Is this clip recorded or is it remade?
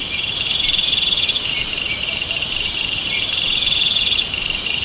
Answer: remade